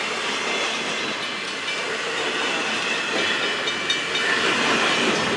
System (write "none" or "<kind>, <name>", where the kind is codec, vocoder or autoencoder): none